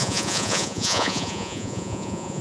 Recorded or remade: remade